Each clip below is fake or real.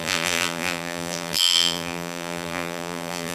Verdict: fake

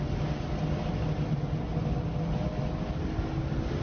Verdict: real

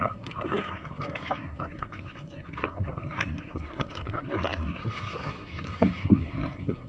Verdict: fake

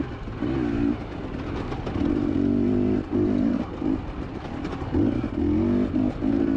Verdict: real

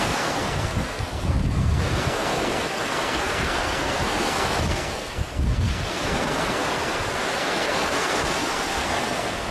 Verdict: fake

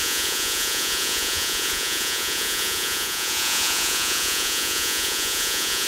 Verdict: fake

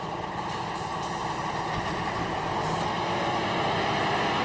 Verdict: real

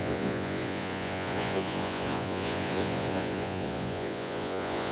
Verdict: fake